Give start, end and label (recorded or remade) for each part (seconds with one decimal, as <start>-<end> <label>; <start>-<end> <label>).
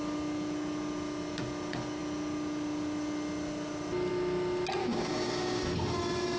0.0-4.8 recorded; 4.8-5.6 remade; 5.6-6.4 recorded